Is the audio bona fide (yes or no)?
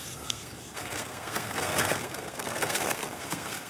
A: no